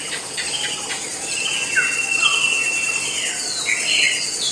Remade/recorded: recorded